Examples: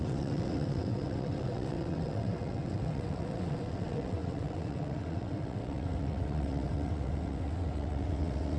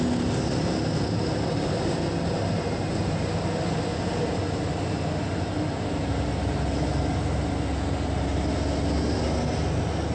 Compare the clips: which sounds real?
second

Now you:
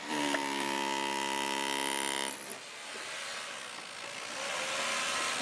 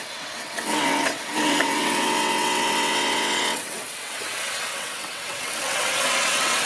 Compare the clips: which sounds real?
first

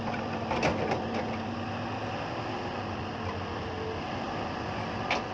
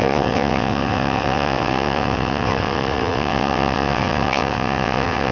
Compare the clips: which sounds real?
first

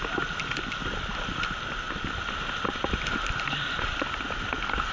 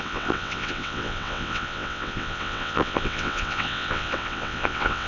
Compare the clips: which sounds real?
first